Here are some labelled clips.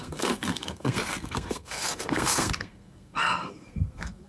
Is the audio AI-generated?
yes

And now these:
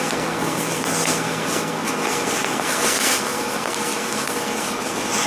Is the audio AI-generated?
yes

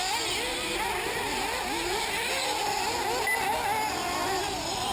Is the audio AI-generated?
no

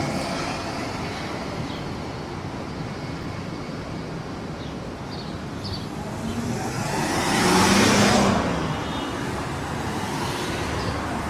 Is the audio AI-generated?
no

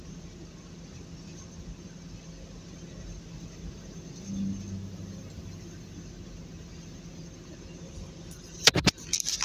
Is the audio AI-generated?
no